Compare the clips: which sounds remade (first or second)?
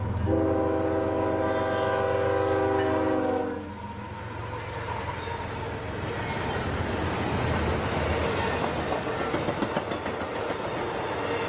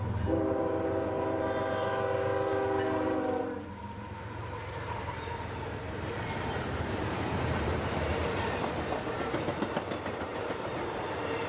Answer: second